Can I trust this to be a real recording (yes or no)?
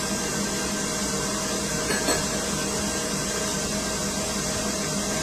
yes